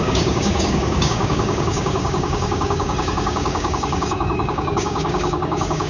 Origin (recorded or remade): remade